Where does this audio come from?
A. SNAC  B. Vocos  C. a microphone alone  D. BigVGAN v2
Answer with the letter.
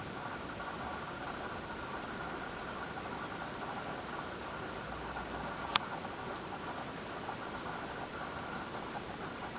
C